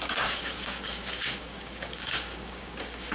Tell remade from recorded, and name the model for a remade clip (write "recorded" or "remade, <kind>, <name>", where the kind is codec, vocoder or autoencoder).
remade, codec, DAC